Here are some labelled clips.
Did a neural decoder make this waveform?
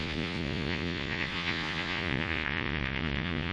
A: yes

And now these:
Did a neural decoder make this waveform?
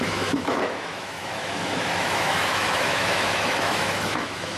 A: yes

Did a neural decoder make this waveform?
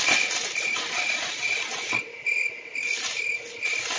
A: no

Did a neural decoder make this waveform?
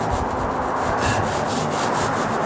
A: no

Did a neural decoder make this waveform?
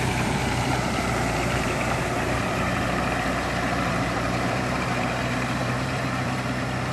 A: yes